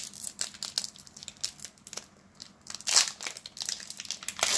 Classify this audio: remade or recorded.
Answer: recorded